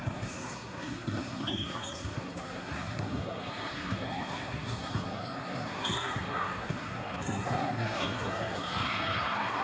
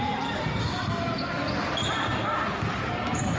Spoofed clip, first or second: first